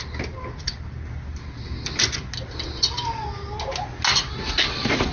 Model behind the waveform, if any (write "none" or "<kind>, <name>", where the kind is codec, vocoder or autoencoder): none